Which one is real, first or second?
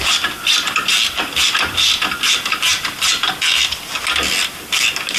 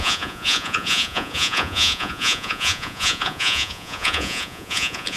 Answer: first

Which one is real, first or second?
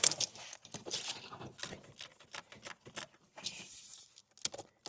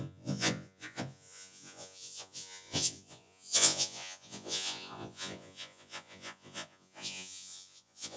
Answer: first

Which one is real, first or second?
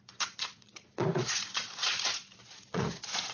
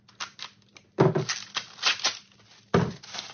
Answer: second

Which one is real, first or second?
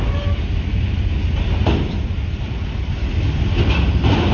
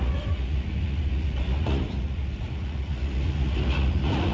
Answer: first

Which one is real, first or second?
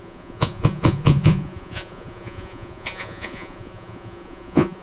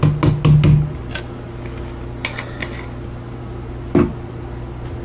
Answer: second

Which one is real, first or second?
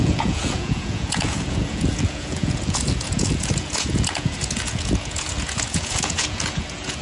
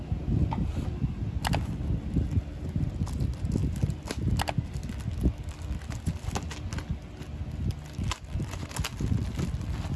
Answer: second